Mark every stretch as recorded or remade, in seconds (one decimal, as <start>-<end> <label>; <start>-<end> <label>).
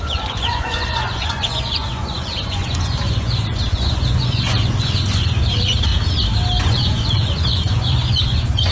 0.0-5.9 remade; 5.9-6.6 recorded; 6.6-8.7 remade